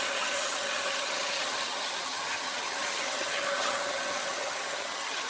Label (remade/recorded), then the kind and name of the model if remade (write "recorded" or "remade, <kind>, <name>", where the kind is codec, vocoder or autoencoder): remade, vocoder, HiFi-GAN